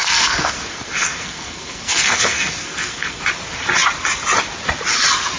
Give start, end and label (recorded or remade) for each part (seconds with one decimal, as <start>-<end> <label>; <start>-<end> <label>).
0.0-3.2 remade; 3.2-5.4 recorded